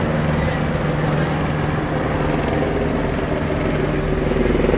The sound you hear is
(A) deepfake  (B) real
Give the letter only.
B